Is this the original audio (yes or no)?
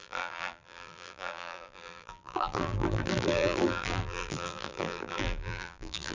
no